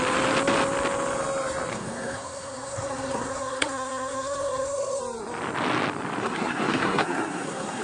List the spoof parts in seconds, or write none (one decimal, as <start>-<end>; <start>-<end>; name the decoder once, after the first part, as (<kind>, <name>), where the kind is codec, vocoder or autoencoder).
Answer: 1.7-5.0 (codec, SNAC); 6.2-7.8